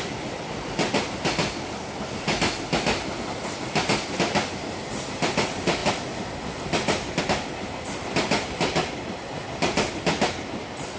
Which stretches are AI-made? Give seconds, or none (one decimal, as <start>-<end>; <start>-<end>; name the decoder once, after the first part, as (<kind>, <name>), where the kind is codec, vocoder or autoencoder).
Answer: none